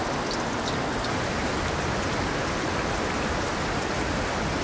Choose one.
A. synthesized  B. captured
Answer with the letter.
B